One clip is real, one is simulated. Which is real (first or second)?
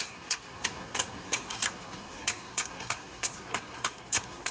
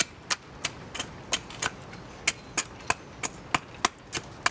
second